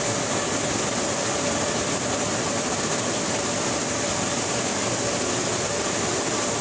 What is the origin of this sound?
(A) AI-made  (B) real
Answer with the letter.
B